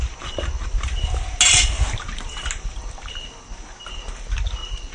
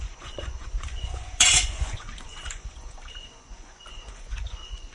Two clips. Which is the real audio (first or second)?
first